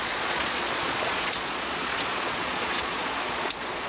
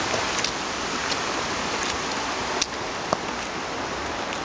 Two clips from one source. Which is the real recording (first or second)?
second